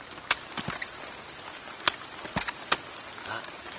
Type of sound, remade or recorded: recorded